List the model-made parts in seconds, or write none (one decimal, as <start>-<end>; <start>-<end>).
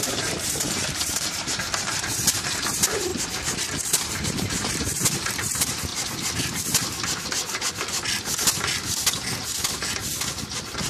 0.0-3.1; 3.8-5.9